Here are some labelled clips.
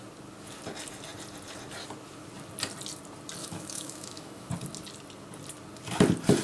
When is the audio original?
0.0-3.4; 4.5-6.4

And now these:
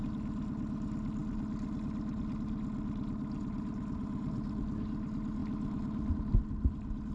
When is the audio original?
0.0-7.1